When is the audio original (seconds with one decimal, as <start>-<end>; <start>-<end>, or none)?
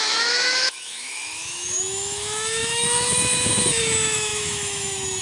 none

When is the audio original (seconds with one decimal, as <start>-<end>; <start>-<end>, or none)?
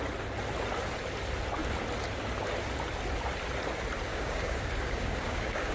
0.0-4.1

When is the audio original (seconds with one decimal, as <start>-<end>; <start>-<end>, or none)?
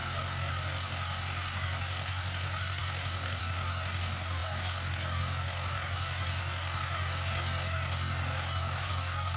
none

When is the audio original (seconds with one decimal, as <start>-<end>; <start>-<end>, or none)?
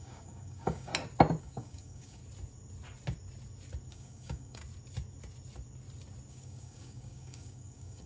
0.9-1.4; 2.2-3.9; 4.6-6.3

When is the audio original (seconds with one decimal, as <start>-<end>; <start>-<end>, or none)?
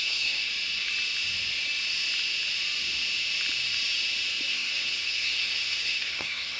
0.5-4.5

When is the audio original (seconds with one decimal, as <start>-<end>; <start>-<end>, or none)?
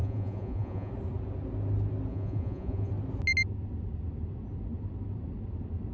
0.9-2.1; 2.9-5.9